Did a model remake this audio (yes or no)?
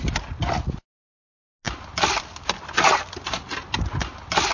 no